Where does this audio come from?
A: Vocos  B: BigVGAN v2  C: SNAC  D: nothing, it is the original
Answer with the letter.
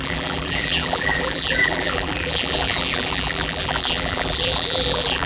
B